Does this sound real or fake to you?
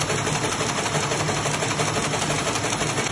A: real